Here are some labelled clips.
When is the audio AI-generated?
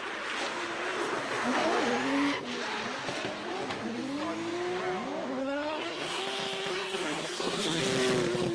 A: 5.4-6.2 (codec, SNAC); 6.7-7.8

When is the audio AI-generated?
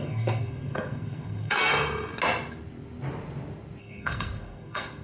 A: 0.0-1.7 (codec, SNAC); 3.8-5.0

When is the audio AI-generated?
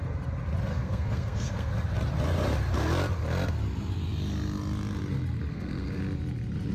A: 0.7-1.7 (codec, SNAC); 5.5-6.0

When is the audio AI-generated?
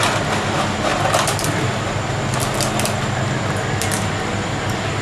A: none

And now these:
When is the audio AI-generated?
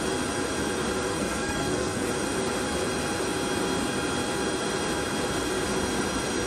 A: 1.1-2.1 (codec, SNAC)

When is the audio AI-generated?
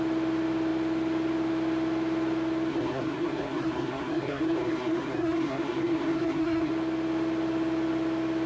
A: 2.7-6.7 (codec, SNAC)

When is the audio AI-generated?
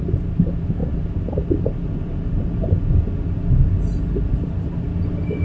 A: none